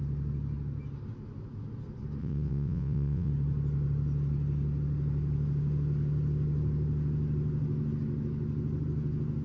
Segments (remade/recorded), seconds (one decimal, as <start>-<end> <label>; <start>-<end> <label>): 0.0-2.2 recorded; 2.2-3.3 remade; 3.3-9.4 recorded